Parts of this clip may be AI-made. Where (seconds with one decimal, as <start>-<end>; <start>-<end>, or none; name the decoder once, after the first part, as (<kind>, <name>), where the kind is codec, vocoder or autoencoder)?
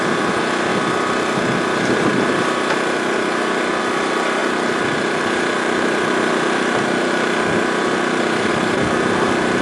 0.0-0.7 (vocoder, BigVGAN v2); 3.8-9.6